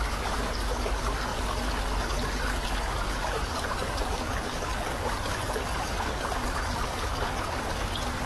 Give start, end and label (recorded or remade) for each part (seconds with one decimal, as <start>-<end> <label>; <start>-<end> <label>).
0.0-8.3 remade